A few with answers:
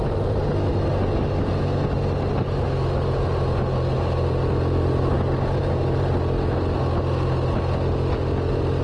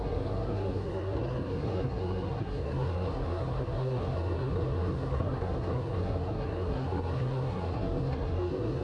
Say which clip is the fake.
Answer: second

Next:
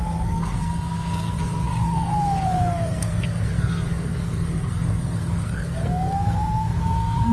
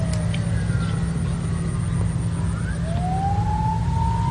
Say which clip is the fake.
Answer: first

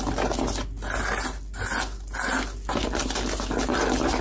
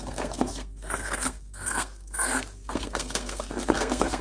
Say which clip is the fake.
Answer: second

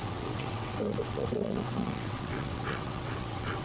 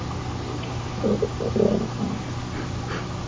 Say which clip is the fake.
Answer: first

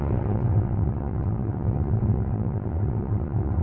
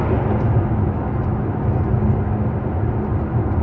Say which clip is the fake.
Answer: first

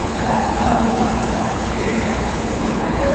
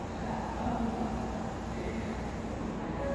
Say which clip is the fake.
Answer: first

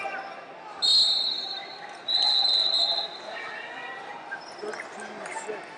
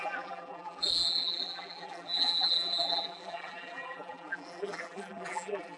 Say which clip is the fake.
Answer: second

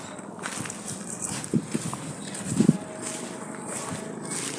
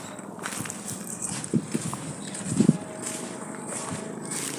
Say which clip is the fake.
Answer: second